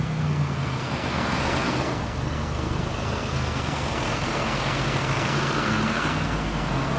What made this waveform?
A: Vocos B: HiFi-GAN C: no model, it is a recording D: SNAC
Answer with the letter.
D